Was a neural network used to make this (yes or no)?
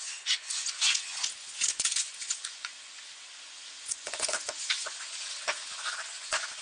yes